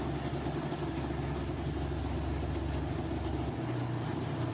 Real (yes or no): yes